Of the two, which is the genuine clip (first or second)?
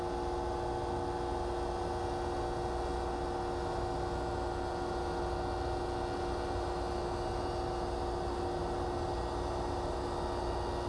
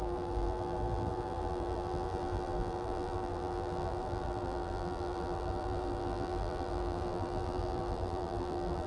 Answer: first